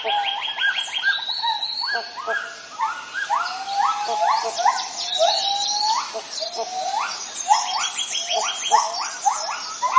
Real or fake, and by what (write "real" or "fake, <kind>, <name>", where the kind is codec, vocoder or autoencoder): real